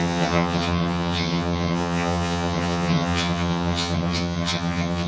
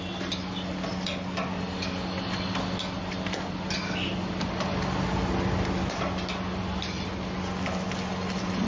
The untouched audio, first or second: second